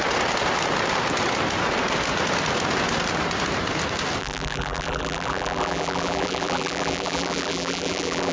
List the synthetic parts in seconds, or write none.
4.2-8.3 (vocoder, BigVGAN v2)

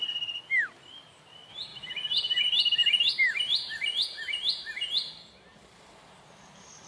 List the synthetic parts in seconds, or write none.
1.7-2.4 (vocoder, BigVGAN v2); 2.8-6.9

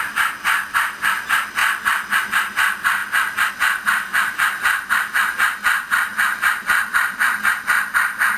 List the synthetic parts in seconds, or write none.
0.0-1.6 (vocoder, BigVGAN v2); 2.2-3.0; 3.5-8.4

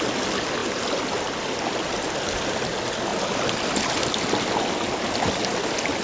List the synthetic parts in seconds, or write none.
none

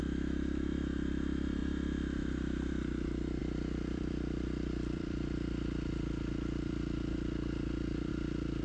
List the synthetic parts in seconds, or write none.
3.4-8.1 (vocoder, BigVGAN v2)

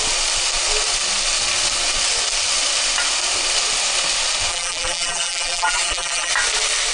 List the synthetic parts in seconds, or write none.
4.5-6.3 (vocoder, BigVGAN v2)

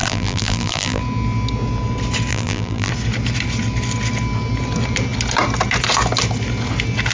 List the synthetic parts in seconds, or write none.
0.0-1.0 (vocoder, BigVGAN v2); 2.3-2.9